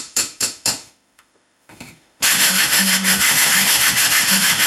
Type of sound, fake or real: fake